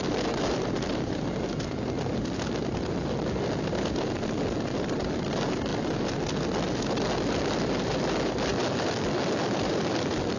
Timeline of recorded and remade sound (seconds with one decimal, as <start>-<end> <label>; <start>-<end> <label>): 0.0-10.4 recorded